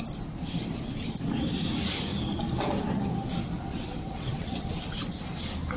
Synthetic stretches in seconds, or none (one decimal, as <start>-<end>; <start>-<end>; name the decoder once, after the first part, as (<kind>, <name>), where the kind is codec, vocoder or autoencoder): 3.7-4.7 (vocoder, WaveNeXt)